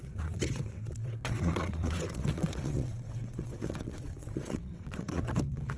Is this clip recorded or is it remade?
remade